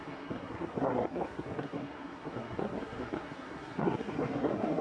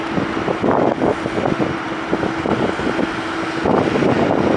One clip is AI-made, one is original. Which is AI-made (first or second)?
first